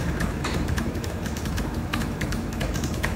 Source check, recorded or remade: remade